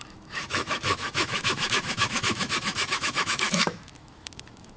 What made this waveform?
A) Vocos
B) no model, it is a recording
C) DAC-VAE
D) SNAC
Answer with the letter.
C